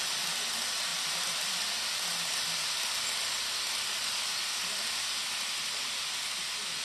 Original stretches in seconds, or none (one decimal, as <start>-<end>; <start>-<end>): 0.0-6.8